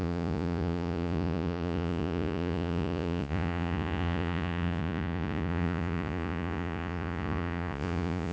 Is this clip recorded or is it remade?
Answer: remade